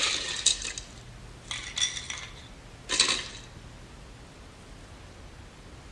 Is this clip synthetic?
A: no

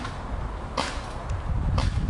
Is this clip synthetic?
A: no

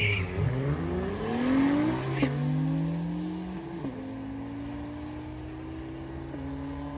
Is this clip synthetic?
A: no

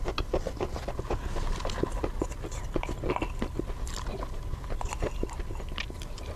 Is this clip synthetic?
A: no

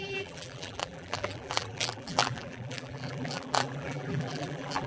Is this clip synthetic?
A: yes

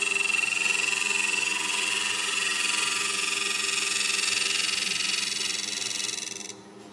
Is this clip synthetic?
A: no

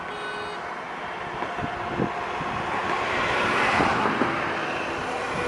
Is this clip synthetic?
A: no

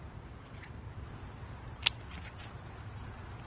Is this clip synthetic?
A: no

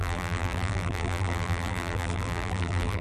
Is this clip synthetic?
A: yes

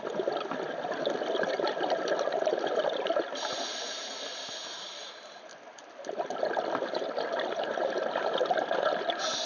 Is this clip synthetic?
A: no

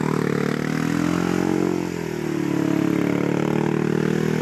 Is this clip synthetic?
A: no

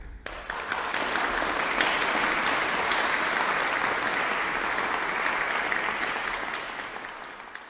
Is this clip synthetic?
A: no